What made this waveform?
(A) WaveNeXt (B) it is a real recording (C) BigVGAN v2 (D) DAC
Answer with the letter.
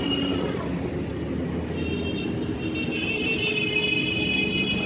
B